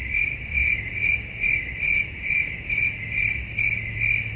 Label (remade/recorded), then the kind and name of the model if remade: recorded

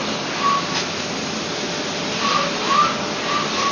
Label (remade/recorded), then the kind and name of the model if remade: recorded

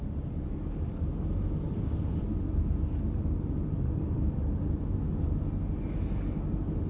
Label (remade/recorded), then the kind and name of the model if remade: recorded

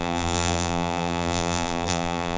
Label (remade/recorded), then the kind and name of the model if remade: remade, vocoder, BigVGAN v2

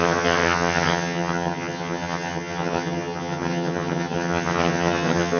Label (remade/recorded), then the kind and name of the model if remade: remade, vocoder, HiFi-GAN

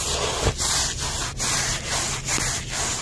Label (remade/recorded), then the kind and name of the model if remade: recorded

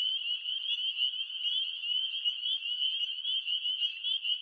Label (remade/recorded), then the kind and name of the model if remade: recorded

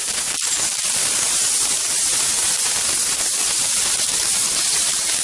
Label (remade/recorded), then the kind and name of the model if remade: recorded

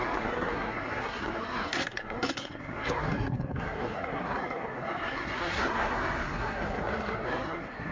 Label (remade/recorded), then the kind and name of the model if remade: remade, codec, SNAC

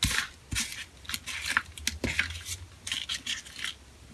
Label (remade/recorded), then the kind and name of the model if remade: recorded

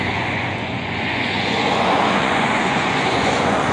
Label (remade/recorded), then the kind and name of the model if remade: remade, vocoder, Vocos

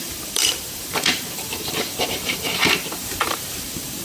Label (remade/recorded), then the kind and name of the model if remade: remade, vocoder, BigVGAN v2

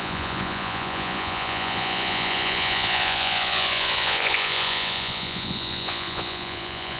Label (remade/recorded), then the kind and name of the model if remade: remade, vocoder, Vocos